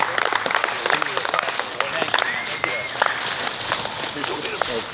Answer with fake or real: real